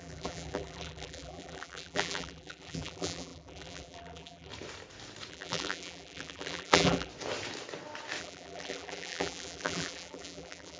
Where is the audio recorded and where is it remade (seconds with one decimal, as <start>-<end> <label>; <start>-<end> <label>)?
0.0-4.5 remade; 4.5-5.3 recorded; 5.3-7.1 remade; 7.1-8.2 recorded; 8.2-10.8 remade